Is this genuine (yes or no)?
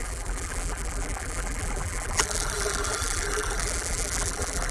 no